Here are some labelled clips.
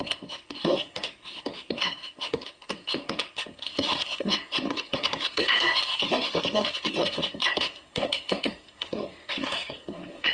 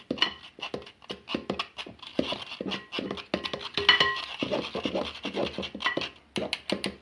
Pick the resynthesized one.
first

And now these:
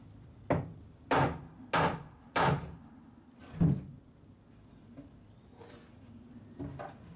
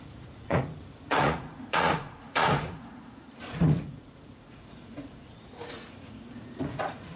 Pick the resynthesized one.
second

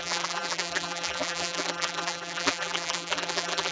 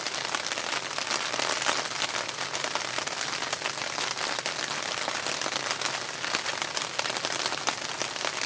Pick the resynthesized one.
first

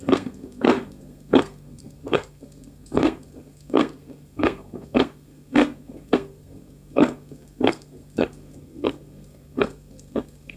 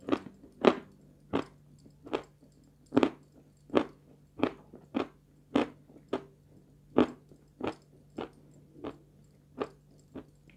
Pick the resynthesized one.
first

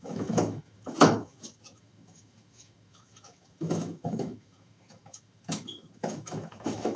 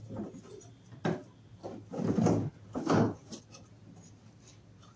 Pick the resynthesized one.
first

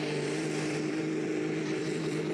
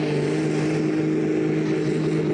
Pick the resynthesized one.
first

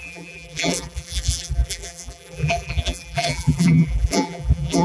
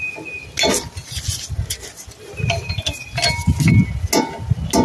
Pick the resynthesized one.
first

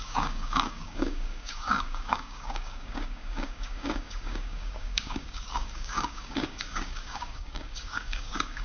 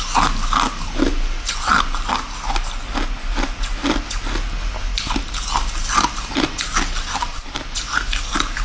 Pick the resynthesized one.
first